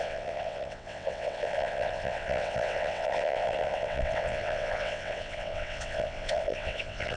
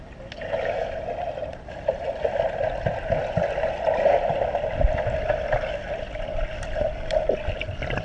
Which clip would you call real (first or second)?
second